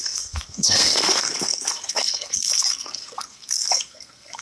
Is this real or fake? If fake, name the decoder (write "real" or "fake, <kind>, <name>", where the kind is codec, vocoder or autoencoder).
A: fake, codec, SNAC